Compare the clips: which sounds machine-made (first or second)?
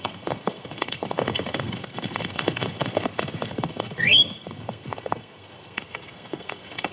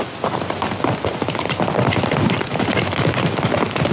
first